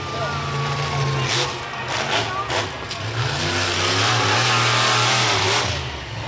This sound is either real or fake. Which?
real